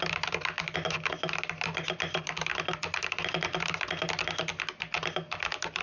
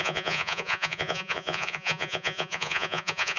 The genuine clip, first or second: first